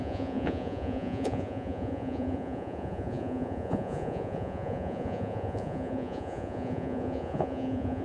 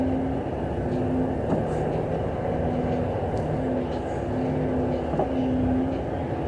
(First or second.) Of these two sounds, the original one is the second